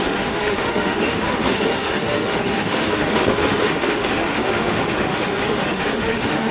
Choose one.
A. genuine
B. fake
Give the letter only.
B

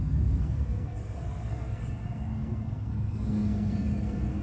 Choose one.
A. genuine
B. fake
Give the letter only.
B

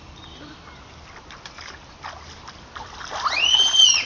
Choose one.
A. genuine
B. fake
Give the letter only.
A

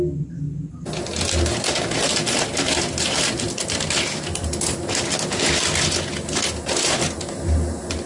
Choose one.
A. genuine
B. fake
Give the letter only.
A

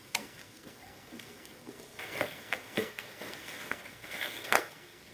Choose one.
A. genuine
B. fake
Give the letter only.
B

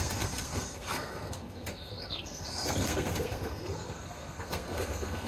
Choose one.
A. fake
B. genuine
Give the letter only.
A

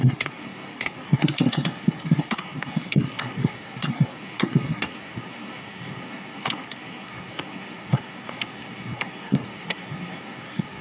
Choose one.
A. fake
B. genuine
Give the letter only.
A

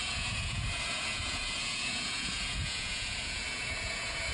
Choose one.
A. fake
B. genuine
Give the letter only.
A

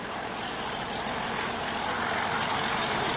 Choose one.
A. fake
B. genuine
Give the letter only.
B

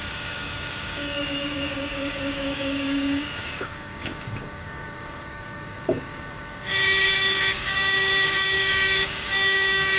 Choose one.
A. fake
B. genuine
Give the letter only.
A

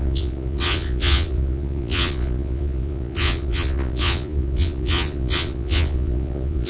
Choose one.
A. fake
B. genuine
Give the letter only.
A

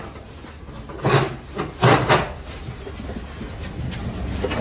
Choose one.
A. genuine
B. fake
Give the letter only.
A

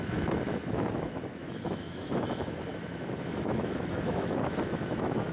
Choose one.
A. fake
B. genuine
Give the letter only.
A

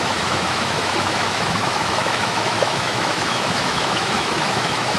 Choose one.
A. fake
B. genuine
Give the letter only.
A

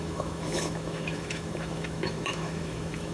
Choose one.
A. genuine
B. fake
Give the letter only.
B